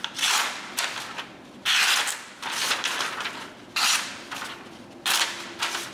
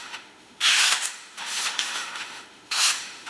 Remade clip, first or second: second